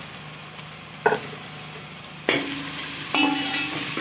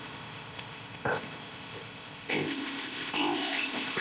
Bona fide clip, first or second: first